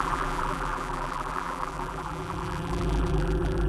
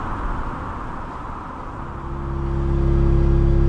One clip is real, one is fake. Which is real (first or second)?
second